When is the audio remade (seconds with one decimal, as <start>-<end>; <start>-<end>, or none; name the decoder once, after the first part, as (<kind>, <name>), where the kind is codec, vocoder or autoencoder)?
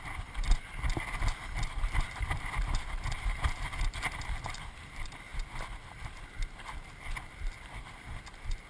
0.0-5.3 (vocoder, BigVGAN v2); 5.9-8.7